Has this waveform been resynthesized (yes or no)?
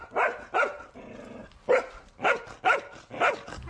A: no